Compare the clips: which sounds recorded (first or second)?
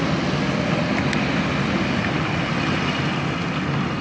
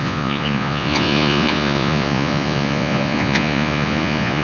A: first